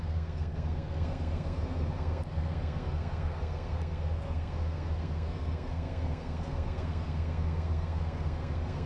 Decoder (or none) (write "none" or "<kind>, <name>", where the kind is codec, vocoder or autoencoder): codec, SNAC